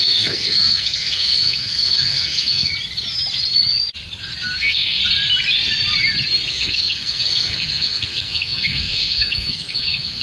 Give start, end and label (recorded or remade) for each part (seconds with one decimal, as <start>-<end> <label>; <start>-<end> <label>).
0.0-2.7 remade; 2.7-4.6 recorded; 4.6-5.0 remade; 5.0-6.5 recorded; 6.5-10.2 remade